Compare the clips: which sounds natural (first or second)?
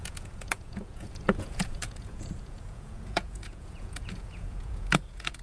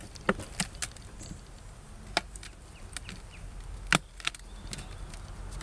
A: second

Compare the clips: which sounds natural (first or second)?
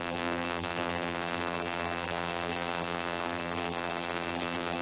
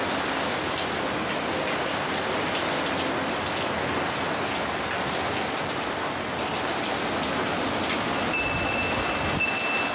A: second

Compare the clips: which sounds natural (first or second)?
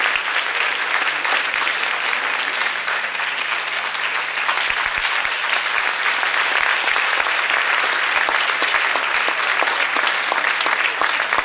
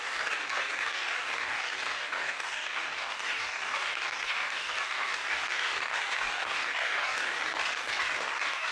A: first